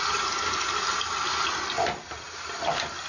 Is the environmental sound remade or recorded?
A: recorded